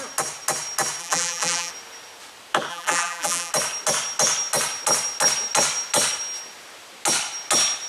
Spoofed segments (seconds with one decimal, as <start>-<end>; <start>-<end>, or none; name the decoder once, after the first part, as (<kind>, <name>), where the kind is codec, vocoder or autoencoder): 1.0-1.7 (vocoder, BigVGAN v2); 2.7-3.5